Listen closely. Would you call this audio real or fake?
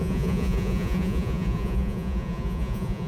fake